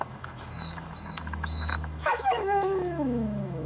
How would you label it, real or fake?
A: fake